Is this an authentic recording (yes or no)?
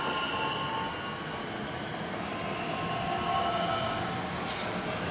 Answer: yes